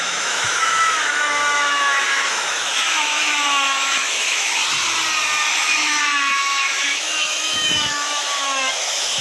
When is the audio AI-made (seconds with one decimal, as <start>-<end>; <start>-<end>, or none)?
0.0-4.6; 5.5-9.2